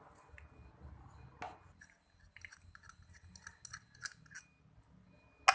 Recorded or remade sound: recorded